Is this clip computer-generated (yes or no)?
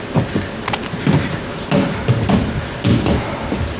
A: no